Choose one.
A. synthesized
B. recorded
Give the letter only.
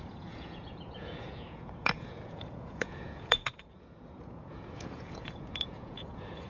A